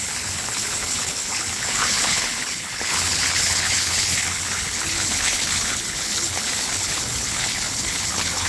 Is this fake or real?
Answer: fake